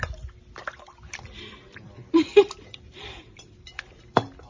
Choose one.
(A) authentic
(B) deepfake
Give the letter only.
B